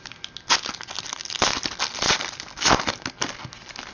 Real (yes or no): yes